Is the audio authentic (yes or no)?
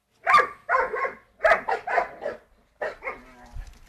yes